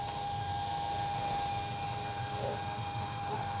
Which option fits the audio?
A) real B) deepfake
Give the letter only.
B